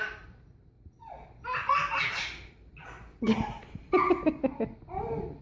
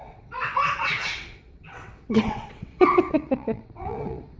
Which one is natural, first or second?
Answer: first